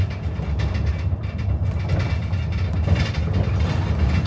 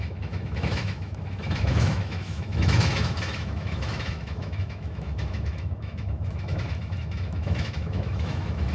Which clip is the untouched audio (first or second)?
first